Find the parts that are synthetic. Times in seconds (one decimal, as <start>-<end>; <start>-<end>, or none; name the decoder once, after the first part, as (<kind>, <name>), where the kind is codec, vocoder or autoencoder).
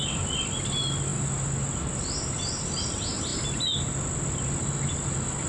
none